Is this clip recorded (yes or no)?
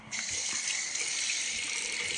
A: yes